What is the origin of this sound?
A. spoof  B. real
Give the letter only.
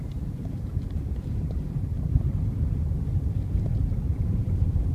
A